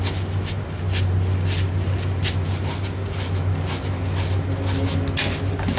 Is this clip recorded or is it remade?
recorded